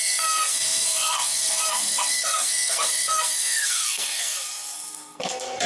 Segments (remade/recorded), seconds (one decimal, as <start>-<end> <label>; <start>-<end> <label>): 0.0-5.7 remade